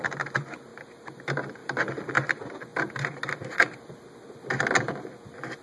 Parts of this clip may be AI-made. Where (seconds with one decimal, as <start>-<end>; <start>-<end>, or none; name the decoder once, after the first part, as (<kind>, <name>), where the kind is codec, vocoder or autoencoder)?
0.7-1.2 (vocoder, BigVGAN v2); 1.6-2.3